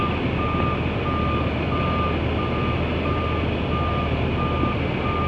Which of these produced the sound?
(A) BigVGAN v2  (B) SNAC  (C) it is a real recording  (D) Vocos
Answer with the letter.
C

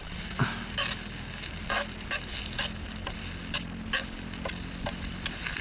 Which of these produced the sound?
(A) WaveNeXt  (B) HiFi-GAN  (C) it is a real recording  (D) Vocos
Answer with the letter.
C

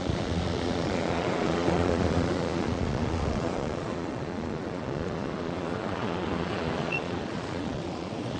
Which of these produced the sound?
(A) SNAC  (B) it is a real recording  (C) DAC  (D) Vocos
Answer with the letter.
D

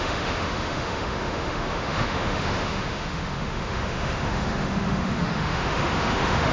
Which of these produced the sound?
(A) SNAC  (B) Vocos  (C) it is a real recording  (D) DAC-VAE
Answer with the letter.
D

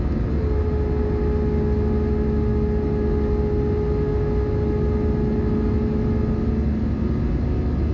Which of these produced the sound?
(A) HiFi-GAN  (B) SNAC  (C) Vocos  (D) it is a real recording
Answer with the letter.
D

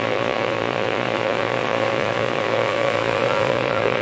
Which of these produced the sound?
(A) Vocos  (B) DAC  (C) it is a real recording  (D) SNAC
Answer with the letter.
A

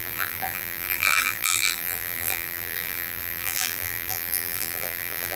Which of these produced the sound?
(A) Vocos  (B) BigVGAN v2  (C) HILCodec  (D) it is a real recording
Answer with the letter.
B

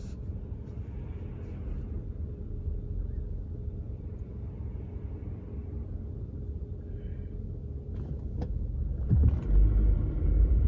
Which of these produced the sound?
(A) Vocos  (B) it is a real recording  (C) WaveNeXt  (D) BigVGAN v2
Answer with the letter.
B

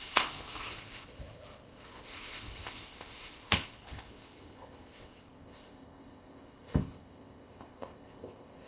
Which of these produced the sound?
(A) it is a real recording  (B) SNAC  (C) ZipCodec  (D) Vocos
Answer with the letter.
C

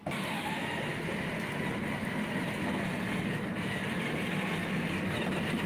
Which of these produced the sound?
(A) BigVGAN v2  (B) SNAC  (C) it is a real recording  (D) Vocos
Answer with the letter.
C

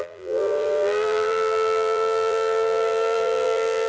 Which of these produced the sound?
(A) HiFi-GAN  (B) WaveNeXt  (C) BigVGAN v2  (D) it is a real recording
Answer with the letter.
C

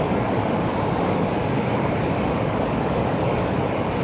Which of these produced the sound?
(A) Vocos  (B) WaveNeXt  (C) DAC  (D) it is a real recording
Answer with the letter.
C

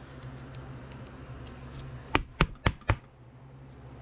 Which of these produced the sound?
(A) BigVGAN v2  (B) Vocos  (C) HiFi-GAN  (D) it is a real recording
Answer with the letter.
D